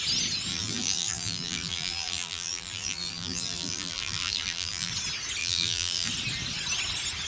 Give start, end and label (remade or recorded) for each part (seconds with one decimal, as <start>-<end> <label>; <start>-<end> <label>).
0.0-0.5 recorded; 0.5-4.9 remade; 4.9-5.4 recorded; 5.4-6.1 remade; 6.1-7.3 recorded